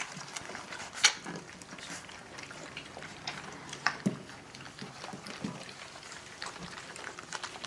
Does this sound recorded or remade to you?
remade